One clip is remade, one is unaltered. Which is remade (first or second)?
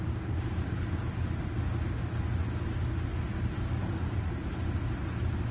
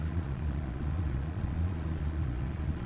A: second